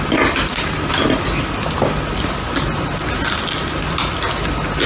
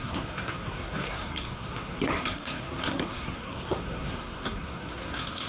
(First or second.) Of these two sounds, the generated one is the second